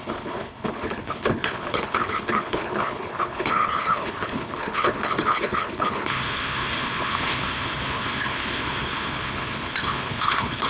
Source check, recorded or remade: remade